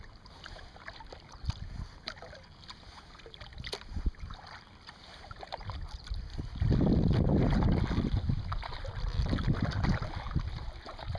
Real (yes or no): yes